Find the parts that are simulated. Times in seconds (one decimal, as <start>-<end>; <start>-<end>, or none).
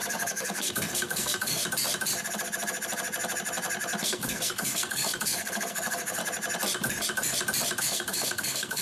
0.0-1.6; 4.0-6.2; 7.8-8.8